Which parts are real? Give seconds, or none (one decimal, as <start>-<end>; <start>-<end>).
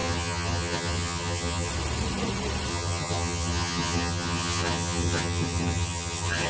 1.7-2.7